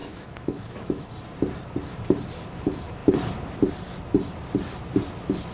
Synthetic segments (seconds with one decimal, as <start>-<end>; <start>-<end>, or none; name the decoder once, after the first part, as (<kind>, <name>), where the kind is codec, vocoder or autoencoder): 0.0-1.1 (autoencoder, DAC-VAE)